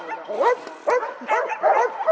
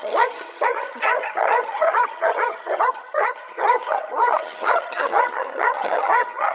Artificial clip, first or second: second